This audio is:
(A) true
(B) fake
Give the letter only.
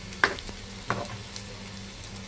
A